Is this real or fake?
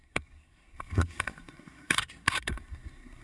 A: fake